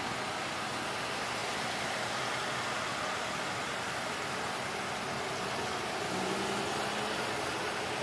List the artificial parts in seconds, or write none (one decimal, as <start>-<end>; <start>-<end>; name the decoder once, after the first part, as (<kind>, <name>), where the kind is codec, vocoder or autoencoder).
none